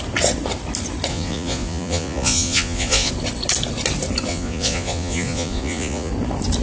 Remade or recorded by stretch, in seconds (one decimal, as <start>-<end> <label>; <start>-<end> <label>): 0.0-1.1 recorded; 1.1-3.1 remade; 3.1-4.3 recorded; 4.3-6.1 remade; 6.1-6.6 recorded